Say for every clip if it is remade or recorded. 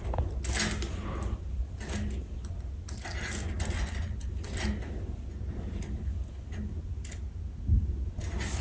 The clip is recorded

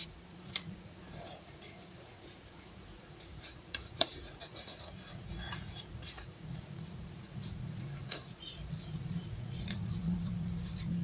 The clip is remade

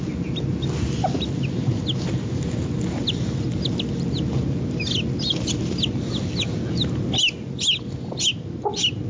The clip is recorded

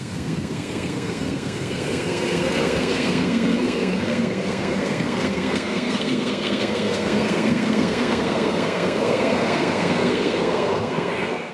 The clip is remade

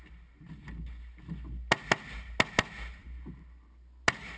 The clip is recorded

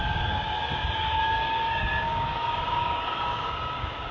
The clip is remade